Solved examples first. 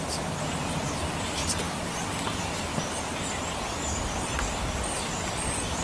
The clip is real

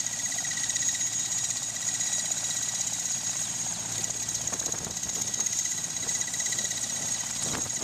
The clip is real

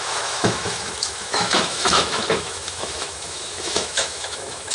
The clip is fake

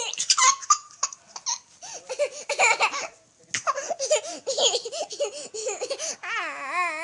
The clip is real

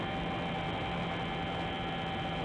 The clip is real